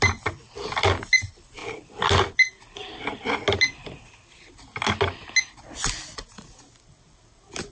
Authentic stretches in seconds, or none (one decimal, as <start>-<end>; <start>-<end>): 0.0-7.7